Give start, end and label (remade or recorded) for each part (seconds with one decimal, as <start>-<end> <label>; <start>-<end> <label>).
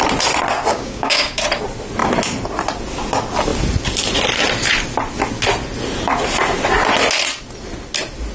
0.0-0.7 recorded; 0.7-1.4 remade; 1.4-8.3 recorded